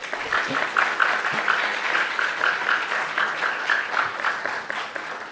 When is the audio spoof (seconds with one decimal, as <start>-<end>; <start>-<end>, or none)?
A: none